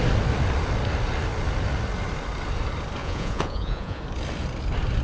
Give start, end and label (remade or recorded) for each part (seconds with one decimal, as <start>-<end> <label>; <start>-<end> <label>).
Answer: 0.0-3.0 recorded; 3.0-4.0 remade; 4.0-5.0 recorded